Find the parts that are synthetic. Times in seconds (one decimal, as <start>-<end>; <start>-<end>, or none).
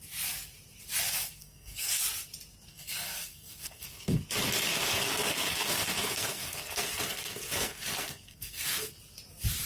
1.1-2.0; 2.7-4.2; 4.7-8.9